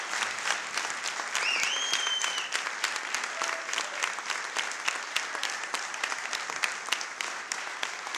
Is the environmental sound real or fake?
real